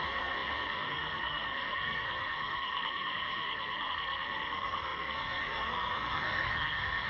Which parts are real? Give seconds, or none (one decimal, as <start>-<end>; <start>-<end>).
none